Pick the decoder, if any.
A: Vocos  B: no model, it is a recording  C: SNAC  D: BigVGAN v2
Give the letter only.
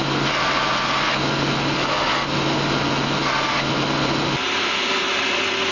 B